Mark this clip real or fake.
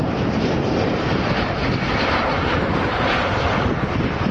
fake